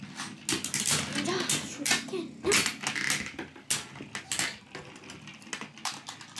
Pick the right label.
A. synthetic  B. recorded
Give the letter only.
B